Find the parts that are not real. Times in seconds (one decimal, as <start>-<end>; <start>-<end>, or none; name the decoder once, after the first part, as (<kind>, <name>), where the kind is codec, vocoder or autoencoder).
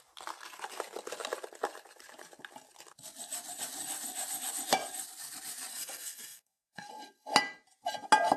5.7-6.9 (codec, SNAC)